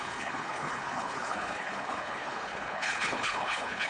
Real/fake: fake